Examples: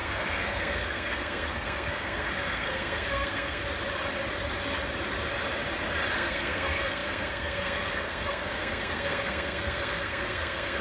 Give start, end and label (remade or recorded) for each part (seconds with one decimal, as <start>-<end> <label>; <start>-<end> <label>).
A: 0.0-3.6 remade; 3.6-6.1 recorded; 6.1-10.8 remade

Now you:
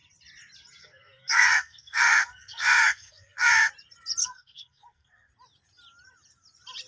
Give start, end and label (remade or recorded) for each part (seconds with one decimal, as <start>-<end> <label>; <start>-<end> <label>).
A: 0.0-0.8 recorded; 0.8-3.7 remade; 3.7-4.2 recorded; 4.2-5.3 remade; 5.3-6.9 recorded

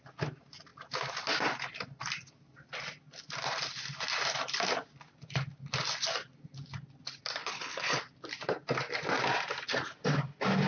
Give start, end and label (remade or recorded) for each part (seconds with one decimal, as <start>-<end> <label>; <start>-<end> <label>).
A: 0.0-7.4 recorded; 7.4-8.0 remade; 8.0-10.7 recorded

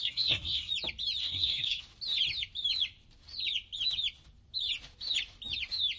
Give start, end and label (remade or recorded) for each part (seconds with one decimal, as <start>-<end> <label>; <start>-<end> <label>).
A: 0.0-0.7 remade; 0.7-1.2 recorded; 1.2-1.8 remade; 1.8-6.0 recorded

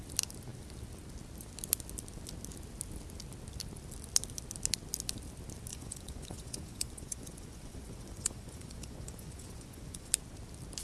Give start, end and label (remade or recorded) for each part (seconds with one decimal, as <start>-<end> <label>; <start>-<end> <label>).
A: 0.0-5.7 recorded; 5.7-10.1 remade; 10.1-10.8 recorded

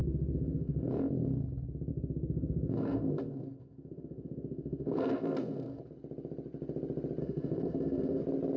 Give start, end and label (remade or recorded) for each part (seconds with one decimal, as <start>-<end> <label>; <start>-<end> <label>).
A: 0.0-0.9 remade; 0.9-1.9 recorded; 1.9-5.8 remade; 5.8-7.2 recorded; 7.2-8.2 remade; 8.2-8.6 recorded